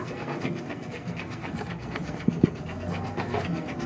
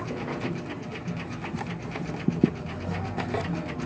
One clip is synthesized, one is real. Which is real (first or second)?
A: second